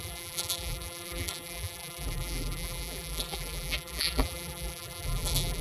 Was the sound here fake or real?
fake